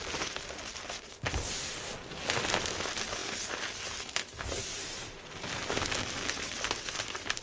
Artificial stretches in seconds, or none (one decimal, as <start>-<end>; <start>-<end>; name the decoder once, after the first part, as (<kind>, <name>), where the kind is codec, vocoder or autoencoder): none